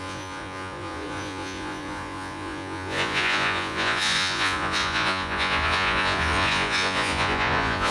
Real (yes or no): no